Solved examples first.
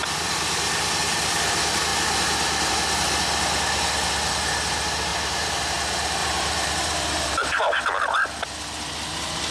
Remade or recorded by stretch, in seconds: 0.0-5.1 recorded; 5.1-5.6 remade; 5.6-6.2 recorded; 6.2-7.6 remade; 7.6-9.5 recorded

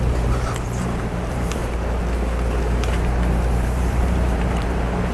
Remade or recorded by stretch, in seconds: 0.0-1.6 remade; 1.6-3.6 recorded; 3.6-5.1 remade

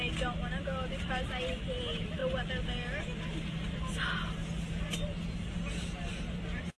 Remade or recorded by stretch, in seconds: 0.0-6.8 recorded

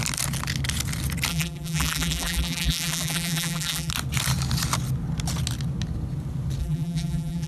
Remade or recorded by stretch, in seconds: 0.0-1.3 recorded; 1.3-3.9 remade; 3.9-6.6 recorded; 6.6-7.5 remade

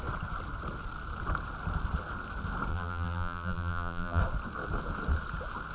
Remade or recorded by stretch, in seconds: 0.0-2.7 recorded; 2.7-4.2 remade; 4.2-5.7 recorded

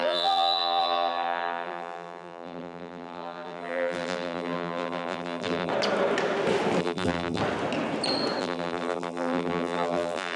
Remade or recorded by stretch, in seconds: 0.0-5.7 remade; 5.7-6.8 recorded; 6.8-7.4 remade; 7.4-8.4 recorded; 8.4-10.4 remade